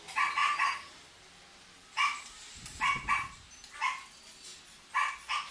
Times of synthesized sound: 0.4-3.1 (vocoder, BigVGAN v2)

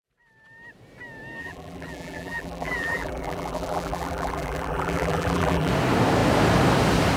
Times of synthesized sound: 1.4-5.7 (vocoder, BigVGAN v2)

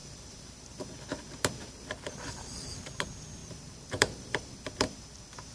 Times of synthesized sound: 0.0-0.8 (vocoder, BigVGAN v2); 3.4-4.5

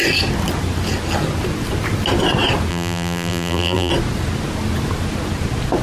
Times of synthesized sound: 2.7-3.9 (vocoder, BigVGAN v2)

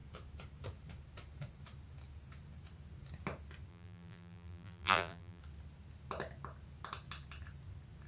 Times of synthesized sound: 3.7-5.4 (vocoder, BigVGAN v2)

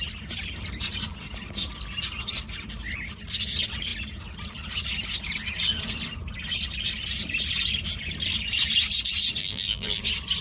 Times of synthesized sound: 9.4-10.0 (vocoder, BigVGAN v2)

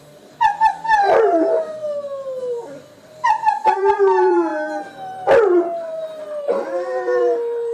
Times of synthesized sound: 0.0-1.8 (vocoder, BigVGAN v2); 2.4-4.5; 6.2-7.7